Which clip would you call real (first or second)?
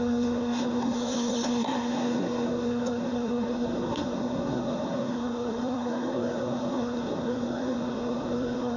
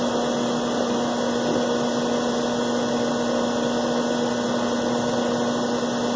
second